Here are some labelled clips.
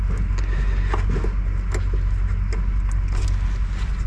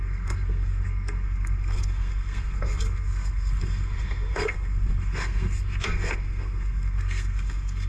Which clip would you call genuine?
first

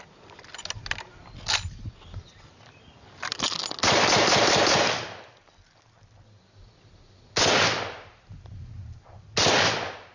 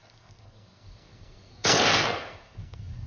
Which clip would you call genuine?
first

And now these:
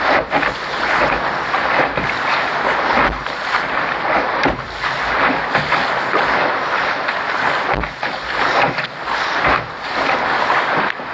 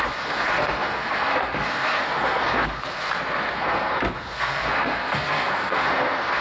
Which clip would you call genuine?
first